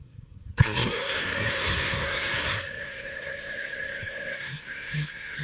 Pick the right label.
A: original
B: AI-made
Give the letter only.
B